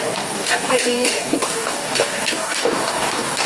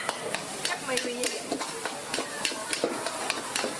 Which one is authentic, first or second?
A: second